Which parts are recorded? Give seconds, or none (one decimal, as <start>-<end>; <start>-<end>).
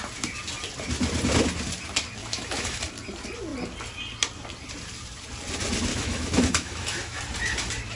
0.0-2.2; 2.8-5.9; 7.2-8.0